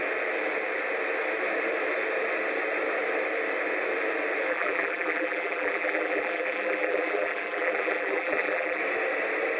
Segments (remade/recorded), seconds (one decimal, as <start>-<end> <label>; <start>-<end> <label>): 0.0-4.5 recorded; 4.5-8.8 remade; 8.8-9.6 recorded